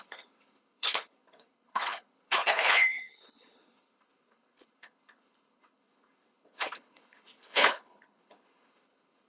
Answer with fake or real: fake